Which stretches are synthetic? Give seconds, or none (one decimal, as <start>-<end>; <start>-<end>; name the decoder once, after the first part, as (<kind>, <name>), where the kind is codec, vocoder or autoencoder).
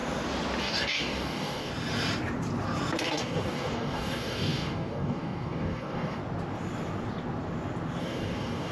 0.6-1.7 (codec, DAC); 3.0-6.2; 8.0-8.7